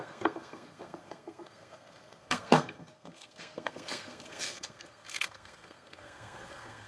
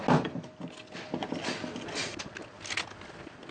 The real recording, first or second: second